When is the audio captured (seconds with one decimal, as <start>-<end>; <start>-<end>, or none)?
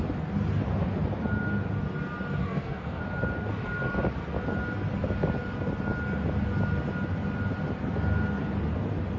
0.0-2.4; 3.0-9.2